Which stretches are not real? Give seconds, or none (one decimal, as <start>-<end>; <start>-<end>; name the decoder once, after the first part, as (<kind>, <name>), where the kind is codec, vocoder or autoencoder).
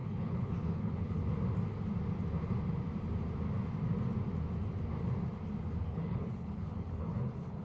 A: 0.0-1.2 (codec, HILCodec); 5.8-7.6